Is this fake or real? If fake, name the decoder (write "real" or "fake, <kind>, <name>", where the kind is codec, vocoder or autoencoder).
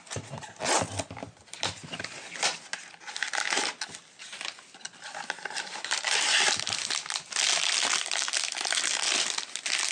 real